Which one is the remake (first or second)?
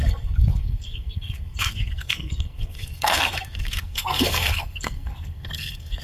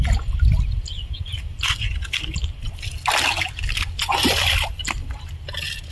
first